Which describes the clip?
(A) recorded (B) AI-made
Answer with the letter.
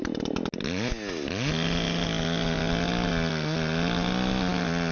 A